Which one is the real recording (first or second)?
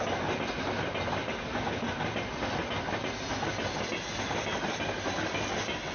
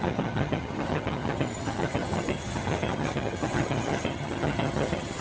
first